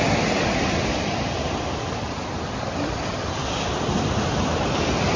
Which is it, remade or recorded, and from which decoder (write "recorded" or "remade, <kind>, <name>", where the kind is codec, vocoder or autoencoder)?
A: recorded